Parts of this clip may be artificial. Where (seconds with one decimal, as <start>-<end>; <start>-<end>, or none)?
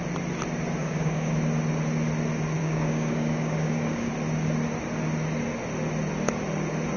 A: 0.8-1.3; 2.6-4.1